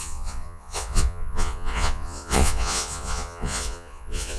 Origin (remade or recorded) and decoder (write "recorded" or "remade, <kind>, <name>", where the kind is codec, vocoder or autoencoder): remade, vocoder, Vocos